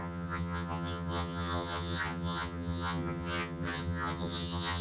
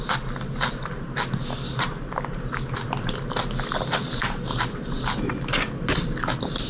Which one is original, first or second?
second